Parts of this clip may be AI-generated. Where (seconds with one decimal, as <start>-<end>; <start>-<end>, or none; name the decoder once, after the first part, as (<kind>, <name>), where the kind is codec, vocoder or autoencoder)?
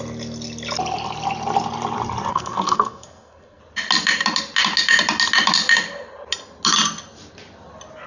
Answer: 2.3-3.6 (codec, SNAC)